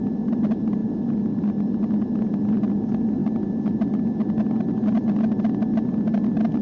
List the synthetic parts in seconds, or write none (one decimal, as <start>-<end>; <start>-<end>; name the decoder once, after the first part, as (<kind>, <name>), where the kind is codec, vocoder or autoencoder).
none